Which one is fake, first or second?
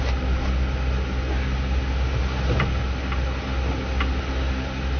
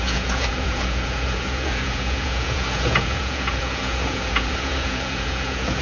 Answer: second